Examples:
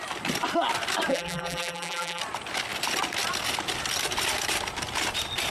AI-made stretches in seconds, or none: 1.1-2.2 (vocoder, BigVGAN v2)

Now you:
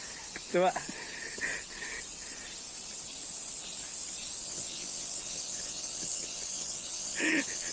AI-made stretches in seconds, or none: 4.4-7.7 (vocoder, WaveNeXt)

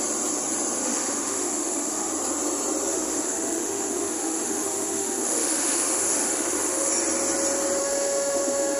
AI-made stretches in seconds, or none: 0.8-2.1 (autoencoder, DAC-VAE); 2.9-6.9; 7.8-8.8

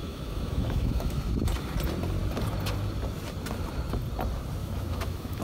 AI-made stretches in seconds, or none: 0.0-1.2 (autoencoder, DAC-VAE); 4.6-5.4